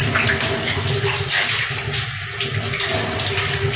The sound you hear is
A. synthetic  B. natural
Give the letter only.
B